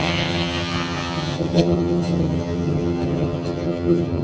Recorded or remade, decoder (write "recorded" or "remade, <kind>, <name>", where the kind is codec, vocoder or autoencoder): remade, vocoder, HiFi-GAN